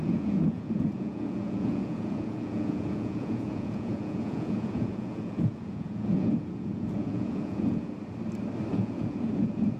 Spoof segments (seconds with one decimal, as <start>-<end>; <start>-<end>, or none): 0.0-7.9; 8.7-9.8